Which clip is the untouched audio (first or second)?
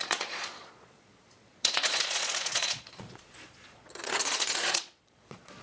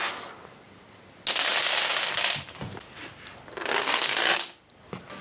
second